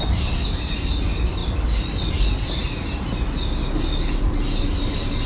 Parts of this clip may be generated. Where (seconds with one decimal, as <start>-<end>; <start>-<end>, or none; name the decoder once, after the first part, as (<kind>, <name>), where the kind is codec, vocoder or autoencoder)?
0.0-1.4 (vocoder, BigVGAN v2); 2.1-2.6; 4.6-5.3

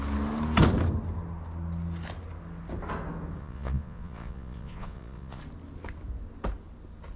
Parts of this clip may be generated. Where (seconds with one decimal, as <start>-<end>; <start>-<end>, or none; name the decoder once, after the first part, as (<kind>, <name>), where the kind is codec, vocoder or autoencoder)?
3.4-5.4 (vocoder, Vocos)

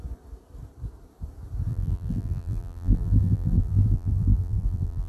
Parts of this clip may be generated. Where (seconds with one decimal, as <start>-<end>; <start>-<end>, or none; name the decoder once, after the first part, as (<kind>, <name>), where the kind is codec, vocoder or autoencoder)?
1.7-5.1 (vocoder, BigVGAN v2)